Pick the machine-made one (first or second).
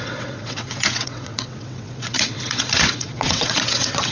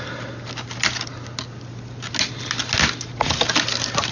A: first